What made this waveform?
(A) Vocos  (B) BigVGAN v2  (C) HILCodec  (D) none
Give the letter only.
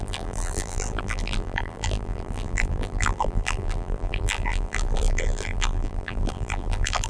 B